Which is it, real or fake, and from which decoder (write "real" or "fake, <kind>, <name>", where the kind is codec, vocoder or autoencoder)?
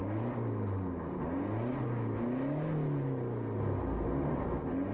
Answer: real